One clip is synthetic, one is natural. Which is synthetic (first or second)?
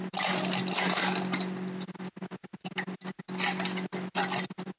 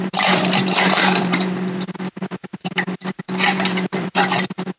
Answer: second